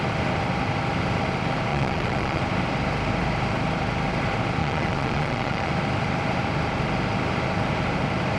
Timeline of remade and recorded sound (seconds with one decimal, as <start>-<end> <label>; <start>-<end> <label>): 0.0-1.7 recorded; 1.7-2.4 remade; 2.4-4.6 recorded; 4.6-5.7 remade; 5.7-8.4 recorded